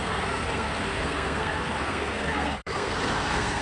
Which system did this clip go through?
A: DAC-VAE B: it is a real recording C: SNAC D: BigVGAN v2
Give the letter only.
C